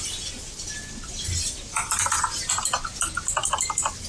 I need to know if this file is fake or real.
real